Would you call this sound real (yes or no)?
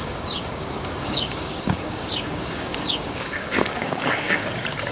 no